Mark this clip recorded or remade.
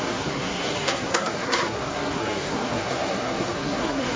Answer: remade